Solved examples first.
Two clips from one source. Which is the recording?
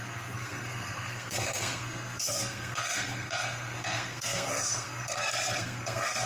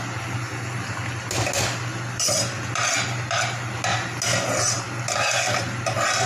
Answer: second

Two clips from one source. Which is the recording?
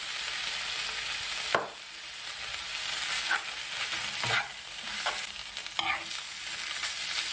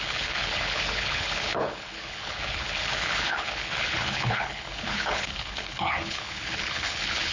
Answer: first